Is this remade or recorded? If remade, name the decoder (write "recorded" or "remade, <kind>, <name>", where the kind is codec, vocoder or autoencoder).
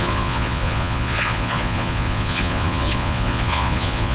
remade, vocoder, Vocos